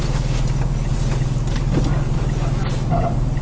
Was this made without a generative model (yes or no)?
yes